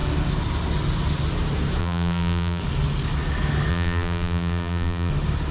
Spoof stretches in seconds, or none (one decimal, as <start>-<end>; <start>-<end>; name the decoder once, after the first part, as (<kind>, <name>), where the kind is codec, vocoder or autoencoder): 1.8-2.6 (vocoder, BigVGAN v2); 3.7-5.1